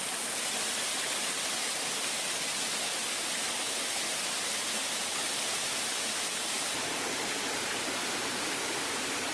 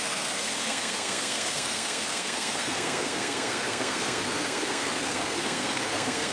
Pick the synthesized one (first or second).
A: second